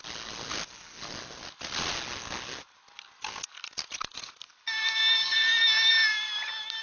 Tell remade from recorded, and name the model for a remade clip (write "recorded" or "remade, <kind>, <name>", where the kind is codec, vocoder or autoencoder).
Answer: recorded